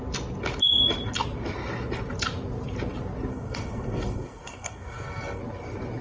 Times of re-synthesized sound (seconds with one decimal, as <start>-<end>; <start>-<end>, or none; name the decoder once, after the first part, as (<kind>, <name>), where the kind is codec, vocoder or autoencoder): 3.3-5.4 (codec, SNAC)